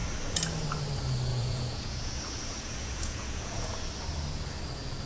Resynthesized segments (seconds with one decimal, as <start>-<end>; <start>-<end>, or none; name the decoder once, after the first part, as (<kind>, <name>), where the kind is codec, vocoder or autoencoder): 1.3-3.8 (vocoder, Vocos)